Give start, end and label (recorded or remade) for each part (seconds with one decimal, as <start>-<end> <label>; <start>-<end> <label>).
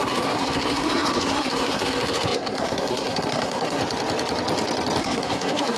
0.0-3.8 remade; 3.8-5.0 recorded; 5.0-5.8 remade